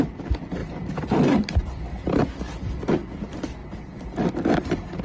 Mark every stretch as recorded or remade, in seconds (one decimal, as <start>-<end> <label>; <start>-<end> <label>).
0.0-0.6 recorded; 0.6-2.2 remade; 2.2-3.6 recorded; 3.6-5.0 remade